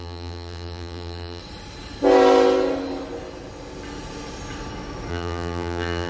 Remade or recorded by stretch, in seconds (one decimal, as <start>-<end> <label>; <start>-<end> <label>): 0.0-1.4 remade; 1.4-5.1 recorded; 5.1-6.1 remade